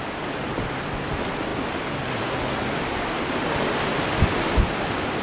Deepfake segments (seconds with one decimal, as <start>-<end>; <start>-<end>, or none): none